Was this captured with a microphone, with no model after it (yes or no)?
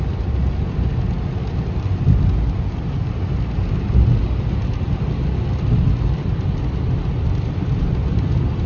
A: yes